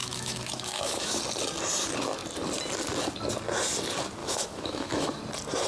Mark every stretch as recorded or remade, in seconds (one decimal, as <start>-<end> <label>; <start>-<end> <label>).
0.0-1.2 remade; 1.2-4.2 recorded; 4.2-5.2 remade; 5.2-5.7 recorded